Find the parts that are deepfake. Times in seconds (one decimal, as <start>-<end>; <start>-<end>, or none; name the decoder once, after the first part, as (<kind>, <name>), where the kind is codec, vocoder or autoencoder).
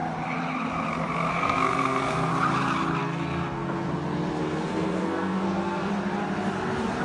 1.3-2.3 (codec, SNAC); 3.0-3.9; 4.4-5.9